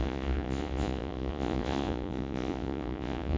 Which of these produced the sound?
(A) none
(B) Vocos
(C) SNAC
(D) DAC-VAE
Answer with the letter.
B